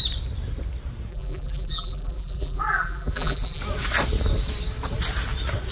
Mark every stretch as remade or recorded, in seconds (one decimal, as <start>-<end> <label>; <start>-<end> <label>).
0.0-1.1 recorded; 1.1-3.6 remade; 3.6-5.7 recorded

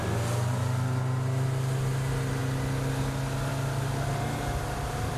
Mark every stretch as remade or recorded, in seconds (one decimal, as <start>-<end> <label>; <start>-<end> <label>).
0.0-5.2 recorded